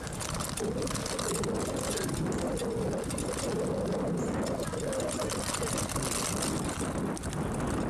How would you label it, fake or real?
real